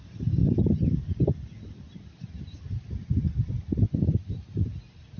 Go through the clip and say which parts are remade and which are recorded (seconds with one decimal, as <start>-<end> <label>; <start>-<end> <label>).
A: 0.0-5.2 recorded